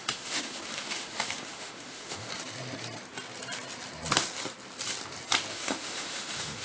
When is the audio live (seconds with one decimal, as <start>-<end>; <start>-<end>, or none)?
2.3-5.5